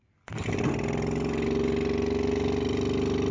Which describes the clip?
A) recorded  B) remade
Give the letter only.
A